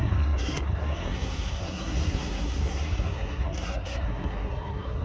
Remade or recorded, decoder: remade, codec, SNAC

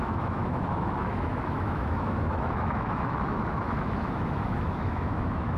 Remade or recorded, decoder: remade, autoencoder, DAC-VAE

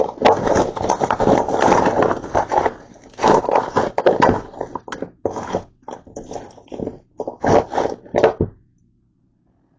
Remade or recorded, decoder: recorded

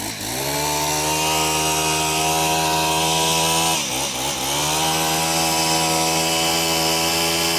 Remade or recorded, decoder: recorded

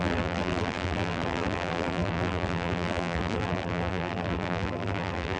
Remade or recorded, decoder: remade, vocoder, BigVGAN v2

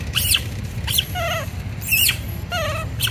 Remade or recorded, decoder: remade, vocoder, BigVGAN v2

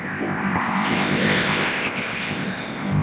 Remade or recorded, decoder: remade, codec, ZipCodec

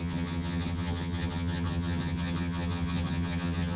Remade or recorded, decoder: remade, vocoder, HiFi-GAN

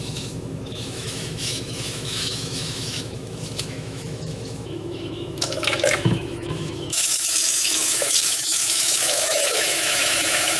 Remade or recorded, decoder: remade, autoencoder, DAC-VAE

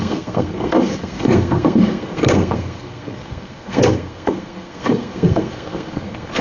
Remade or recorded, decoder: remade, codec, SNAC